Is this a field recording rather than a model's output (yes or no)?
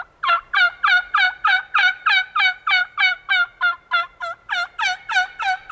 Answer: yes